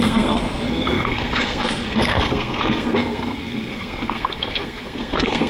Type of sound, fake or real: fake